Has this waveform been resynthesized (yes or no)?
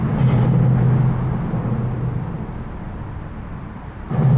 no